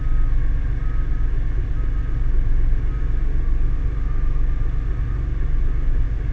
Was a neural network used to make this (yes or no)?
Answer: no